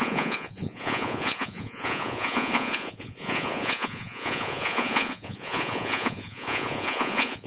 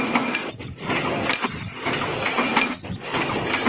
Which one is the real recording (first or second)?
second